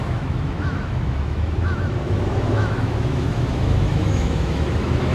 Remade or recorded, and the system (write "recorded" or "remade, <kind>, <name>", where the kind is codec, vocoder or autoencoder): remade, autoencoder, DAC-VAE